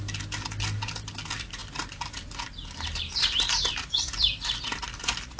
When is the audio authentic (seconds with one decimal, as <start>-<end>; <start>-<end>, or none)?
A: 0.0-5.4